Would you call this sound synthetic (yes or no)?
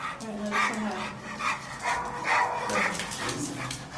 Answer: no